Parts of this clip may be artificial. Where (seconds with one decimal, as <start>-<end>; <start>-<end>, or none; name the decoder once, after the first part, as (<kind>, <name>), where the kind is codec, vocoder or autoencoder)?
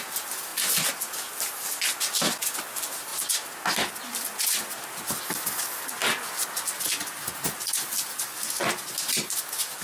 none